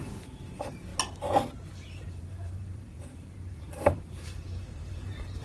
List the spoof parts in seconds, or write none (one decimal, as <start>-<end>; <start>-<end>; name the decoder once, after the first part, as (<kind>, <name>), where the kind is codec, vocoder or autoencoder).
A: 0.0-0.9 (vocoder, BigVGAN v2); 2.0-5.4